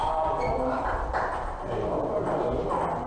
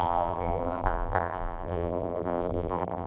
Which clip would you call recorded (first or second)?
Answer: first